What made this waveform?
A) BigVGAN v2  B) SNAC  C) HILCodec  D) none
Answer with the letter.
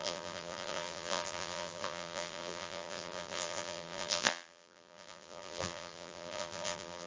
A